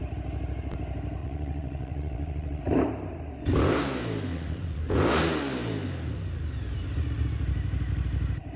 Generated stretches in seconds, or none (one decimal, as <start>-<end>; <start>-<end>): 1.2-2.6; 4.3-4.8